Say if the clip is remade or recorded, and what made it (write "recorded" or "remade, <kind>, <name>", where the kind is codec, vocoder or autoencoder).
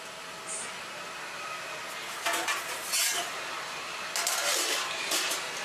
recorded